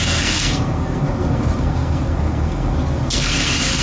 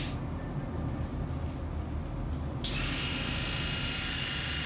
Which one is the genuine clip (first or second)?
second